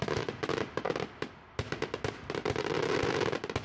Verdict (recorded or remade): recorded